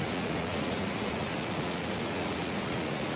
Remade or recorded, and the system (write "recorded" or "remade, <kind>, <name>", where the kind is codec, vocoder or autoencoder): remade, vocoder, Vocos